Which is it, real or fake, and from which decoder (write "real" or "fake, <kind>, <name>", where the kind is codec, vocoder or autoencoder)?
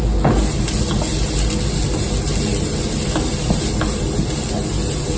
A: real